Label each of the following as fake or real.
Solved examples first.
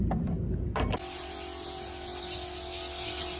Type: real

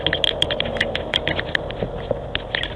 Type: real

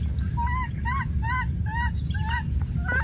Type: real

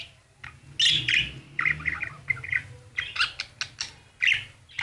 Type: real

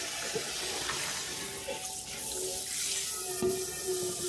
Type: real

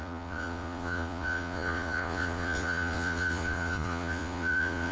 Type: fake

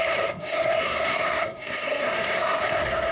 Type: fake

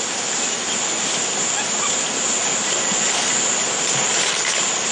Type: real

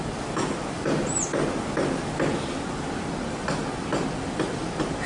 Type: real